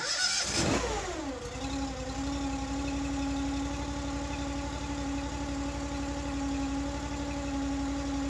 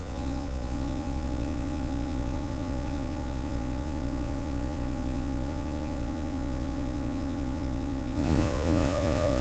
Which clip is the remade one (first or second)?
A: second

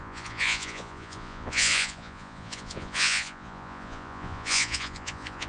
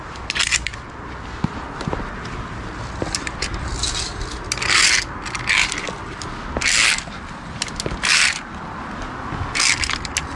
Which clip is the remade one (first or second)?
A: first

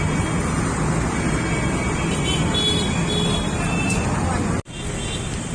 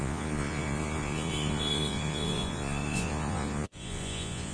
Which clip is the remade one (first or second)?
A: second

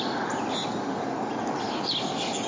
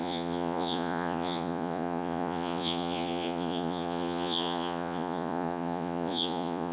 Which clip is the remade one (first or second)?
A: second